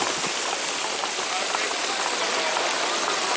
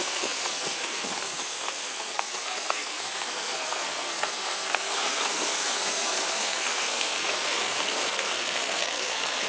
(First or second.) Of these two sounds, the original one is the first